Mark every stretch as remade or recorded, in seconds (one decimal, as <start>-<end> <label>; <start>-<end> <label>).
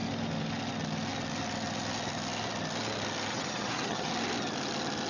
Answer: 0.0-3.3 recorded; 3.3-4.1 remade; 4.1-5.1 recorded